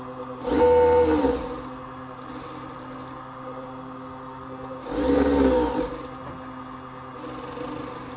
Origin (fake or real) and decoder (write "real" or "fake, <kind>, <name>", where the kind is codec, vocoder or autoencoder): real